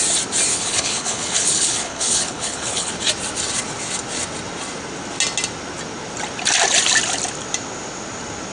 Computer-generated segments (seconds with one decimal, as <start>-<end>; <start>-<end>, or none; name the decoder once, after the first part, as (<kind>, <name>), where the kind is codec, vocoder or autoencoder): 0.5-2.9 (codec, HILCodec)